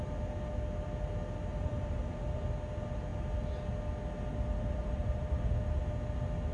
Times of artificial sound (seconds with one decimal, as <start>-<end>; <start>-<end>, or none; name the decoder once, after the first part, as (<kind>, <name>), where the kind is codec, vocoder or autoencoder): 1.5-2.3 (vocoder, BigVGAN v2); 4.3-5.8

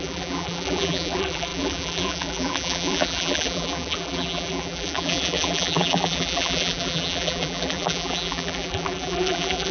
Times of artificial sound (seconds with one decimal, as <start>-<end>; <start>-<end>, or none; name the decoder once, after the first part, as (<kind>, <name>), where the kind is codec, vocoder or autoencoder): 0.0-9.7 (vocoder, BigVGAN v2)

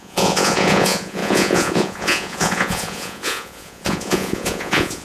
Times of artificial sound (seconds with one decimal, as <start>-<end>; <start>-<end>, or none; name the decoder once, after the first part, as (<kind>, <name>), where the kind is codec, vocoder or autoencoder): 0.0-5.0 (vocoder, Vocos)

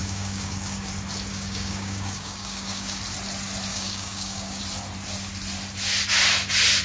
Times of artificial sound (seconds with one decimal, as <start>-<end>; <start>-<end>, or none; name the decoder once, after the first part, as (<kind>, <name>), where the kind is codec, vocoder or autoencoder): 0.0-0.9 (codec, DAC); 1.3-3.0; 3.7-4.6

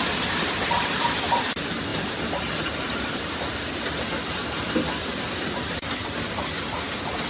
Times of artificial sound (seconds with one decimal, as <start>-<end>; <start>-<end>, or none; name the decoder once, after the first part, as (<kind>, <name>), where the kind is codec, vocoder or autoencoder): none

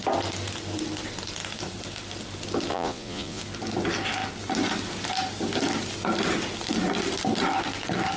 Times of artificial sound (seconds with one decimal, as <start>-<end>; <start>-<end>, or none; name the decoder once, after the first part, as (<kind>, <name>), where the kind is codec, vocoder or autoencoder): 2.7-3.4 (vocoder, Vocos)